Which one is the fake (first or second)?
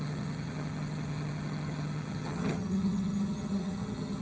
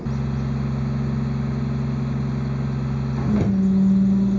first